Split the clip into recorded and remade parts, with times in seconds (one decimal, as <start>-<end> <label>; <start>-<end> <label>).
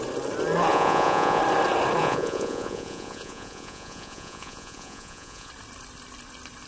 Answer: 0.0-0.7 recorded; 0.7-1.4 remade; 1.4-2.0 recorded; 2.0-5.5 remade; 5.5-6.7 recorded